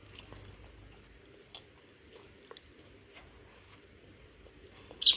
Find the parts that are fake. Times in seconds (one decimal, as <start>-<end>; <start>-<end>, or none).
none